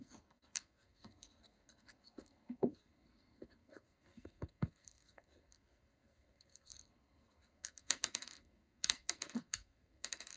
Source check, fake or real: fake